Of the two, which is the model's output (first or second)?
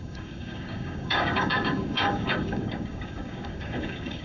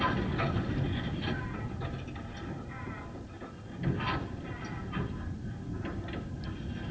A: first